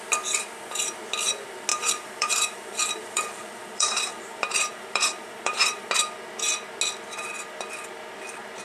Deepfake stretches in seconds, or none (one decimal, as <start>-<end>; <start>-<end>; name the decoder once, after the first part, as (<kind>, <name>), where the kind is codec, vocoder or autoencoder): 1.7-5.9 (vocoder, BigVGAN v2)